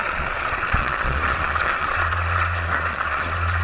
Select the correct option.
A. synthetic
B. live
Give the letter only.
A